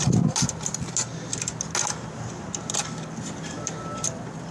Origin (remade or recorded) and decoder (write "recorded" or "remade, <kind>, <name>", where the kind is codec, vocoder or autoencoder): recorded